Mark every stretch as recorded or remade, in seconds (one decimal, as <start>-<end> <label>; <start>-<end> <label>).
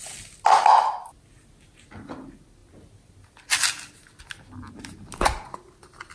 0.0-6.1 recorded